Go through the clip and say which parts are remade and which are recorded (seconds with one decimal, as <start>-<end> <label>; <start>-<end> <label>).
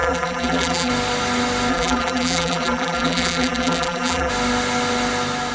0.0-0.9 remade; 0.9-1.7 recorded; 1.7-4.3 remade; 4.3-5.5 recorded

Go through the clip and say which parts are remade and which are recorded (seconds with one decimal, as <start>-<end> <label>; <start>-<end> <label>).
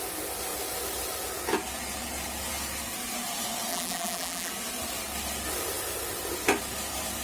0.0-3.7 recorded; 3.7-4.5 remade; 4.5-7.2 recorded